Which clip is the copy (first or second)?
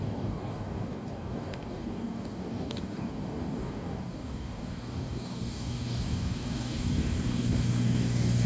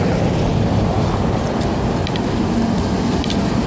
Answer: first